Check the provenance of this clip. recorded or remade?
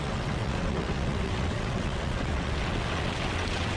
remade